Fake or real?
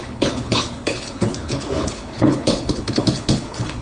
fake